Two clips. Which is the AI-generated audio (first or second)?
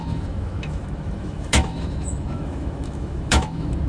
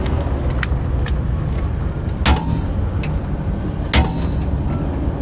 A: first